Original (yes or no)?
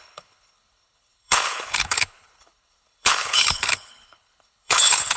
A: no